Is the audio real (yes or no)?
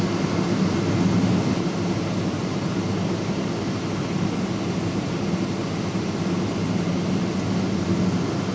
yes